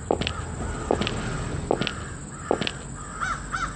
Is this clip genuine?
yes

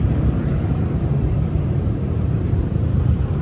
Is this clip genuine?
no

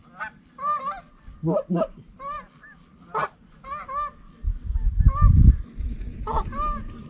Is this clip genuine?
yes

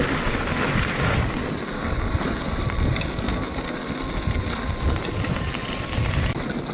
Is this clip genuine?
yes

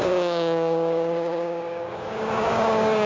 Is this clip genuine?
no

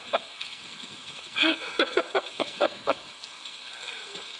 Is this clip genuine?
no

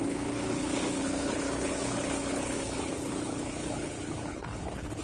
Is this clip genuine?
no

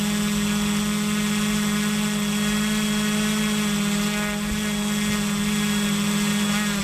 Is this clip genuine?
yes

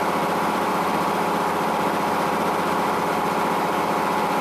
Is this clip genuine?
no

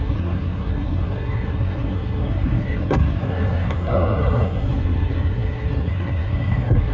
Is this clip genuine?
no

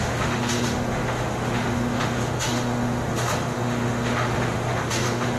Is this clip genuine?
no